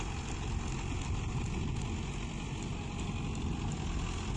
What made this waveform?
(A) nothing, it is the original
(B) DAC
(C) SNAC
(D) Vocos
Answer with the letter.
A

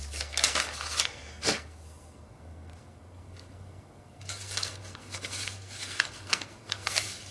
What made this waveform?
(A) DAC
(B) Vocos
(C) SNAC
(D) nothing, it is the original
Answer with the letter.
C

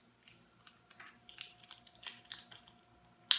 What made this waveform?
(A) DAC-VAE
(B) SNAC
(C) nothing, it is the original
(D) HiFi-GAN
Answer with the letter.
C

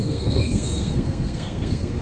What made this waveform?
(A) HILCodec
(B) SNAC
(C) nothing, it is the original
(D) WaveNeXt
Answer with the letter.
B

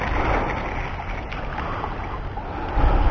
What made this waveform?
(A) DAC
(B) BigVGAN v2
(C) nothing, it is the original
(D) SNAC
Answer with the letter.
C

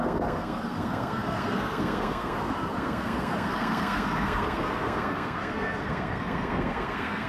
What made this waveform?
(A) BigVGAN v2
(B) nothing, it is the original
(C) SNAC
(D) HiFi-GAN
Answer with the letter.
C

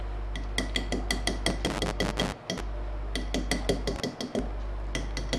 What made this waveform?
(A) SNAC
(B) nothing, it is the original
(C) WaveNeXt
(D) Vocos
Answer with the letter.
B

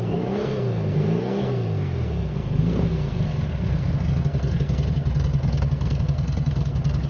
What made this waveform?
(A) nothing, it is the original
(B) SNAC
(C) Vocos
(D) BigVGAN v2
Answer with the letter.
B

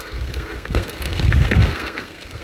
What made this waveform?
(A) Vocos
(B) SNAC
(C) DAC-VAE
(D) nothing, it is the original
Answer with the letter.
B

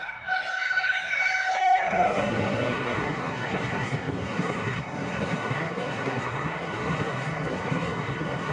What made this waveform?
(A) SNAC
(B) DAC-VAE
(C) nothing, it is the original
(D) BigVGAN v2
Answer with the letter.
A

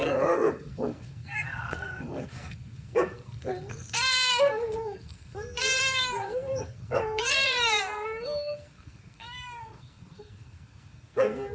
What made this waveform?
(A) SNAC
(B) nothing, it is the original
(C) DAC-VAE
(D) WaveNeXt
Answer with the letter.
A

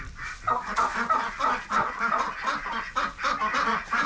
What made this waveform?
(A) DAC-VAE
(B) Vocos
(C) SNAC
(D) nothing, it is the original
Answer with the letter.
D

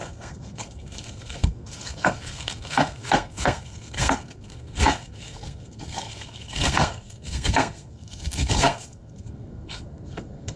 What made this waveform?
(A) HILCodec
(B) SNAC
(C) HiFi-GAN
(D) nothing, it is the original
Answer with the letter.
B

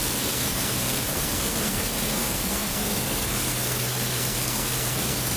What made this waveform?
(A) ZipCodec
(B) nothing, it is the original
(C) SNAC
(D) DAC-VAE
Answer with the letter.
C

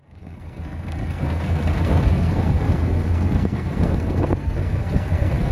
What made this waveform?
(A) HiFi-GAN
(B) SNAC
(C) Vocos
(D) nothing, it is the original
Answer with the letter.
B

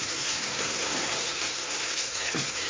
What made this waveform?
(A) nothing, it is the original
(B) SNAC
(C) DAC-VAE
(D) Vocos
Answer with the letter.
B